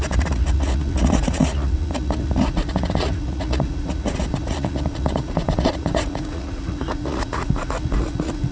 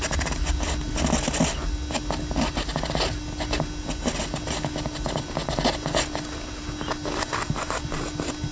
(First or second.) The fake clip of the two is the first